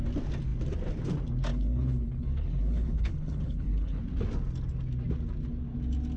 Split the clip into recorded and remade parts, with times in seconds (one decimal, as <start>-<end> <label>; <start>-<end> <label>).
0.0-1.5 recorded; 1.5-4.0 remade; 4.0-6.2 recorded